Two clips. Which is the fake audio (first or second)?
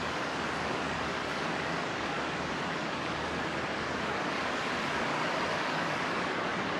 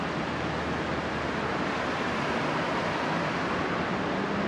first